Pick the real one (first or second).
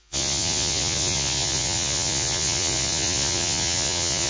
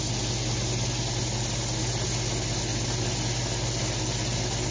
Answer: second